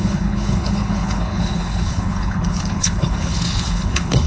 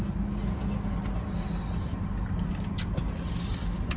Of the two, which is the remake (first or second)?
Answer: first